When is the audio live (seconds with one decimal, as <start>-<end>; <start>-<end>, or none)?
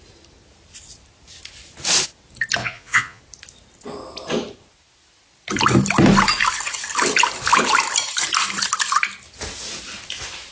0.0-2.6; 3.2-10.5